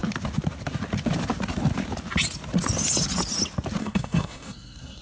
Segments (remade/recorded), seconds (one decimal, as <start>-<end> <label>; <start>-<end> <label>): 0.0-3.8 recorded; 3.8-5.0 remade